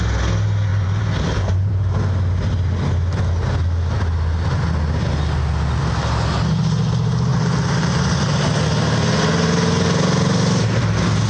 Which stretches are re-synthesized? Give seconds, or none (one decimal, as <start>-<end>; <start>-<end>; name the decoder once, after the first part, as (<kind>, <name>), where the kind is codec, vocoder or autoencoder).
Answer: 0.7-2.0 (vocoder, BigVGAN v2); 7.3-8.1